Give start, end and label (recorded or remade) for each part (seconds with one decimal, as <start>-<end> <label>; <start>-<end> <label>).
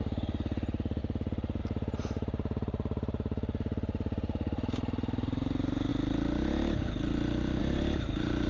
0.0-1.0 remade; 1.0-1.6 recorded; 1.6-5.9 remade; 5.9-7.6 recorded; 7.6-8.5 remade